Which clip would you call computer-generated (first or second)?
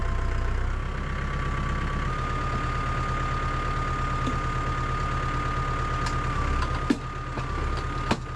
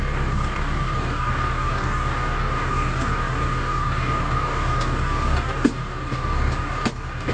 second